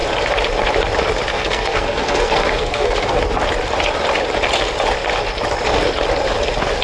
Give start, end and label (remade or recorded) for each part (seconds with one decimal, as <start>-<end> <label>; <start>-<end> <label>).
0.0-1.3 recorded; 1.3-3.2 remade; 3.2-6.8 recorded